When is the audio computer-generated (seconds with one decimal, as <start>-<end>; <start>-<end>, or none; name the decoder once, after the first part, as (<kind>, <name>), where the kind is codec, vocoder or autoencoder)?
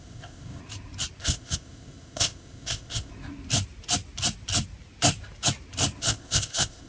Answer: 0.0-0.6 (codec, ZipCodec); 1.2-3.1; 6.0-6.9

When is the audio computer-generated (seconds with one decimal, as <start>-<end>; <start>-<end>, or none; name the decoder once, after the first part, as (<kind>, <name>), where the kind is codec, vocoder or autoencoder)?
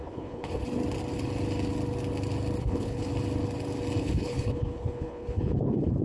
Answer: 0.0-0.6 (codec, HILCodec); 2.6-3.1; 4.0-6.0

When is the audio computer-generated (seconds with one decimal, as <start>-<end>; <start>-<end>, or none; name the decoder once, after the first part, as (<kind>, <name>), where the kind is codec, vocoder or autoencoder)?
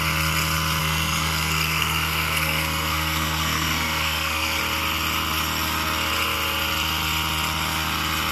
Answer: 0.8-4.6 (codec, SNAC)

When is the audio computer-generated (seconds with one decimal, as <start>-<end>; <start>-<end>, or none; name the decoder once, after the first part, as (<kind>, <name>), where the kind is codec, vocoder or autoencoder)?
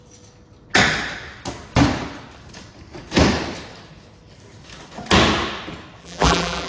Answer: 6.0-6.7 (vocoder, BigVGAN v2)